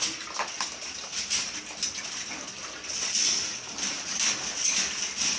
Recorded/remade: recorded